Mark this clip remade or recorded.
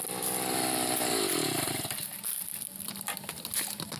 recorded